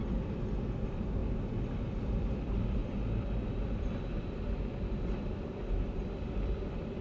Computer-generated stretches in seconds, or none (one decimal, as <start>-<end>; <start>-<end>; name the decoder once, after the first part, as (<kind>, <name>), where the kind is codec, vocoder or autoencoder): 0.0-1.2 (vocoder, BigVGAN v2); 2.1-2.8; 3.6-4.1; 4.9-7.0